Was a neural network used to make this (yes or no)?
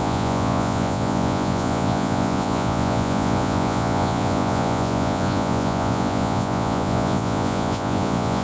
yes